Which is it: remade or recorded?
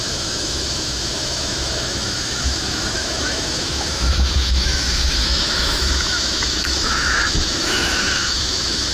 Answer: remade